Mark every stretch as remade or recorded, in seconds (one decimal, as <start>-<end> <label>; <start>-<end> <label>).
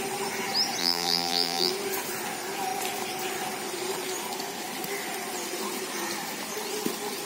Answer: 0.0-0.8 recorded; 0.8-1.7 remade; 1.7-7.2 recorded